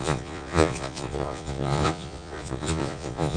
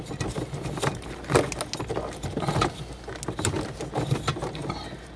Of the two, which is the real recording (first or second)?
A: second